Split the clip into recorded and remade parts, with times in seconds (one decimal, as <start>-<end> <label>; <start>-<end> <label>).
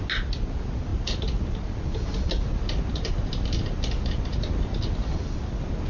0.0-5.9 recorded